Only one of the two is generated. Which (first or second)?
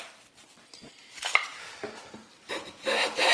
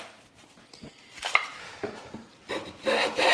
second